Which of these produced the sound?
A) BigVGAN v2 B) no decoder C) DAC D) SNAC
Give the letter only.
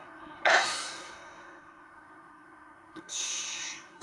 D